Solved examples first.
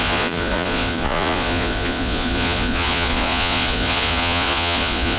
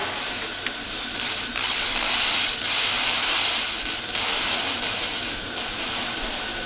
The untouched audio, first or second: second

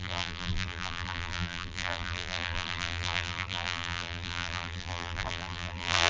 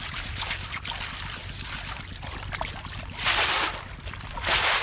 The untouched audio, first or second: second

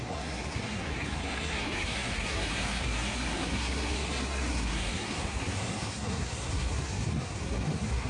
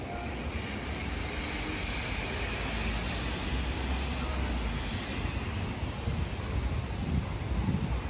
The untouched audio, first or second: second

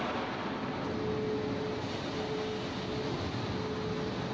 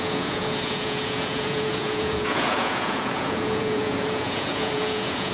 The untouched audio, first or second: first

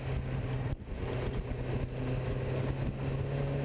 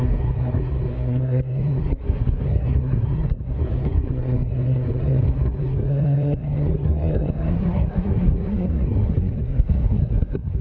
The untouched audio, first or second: first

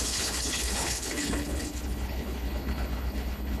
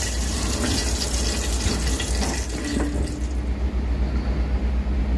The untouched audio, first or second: second